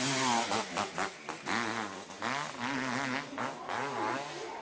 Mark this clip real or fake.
real